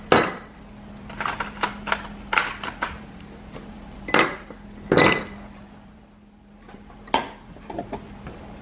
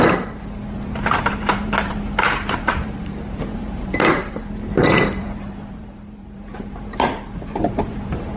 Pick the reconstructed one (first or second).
second